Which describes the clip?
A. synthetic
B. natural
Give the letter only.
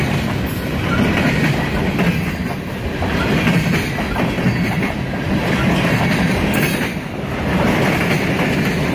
B